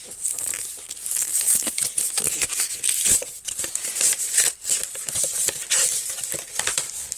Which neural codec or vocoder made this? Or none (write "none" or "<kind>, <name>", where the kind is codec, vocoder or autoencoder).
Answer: vocoder, BigVGAN v2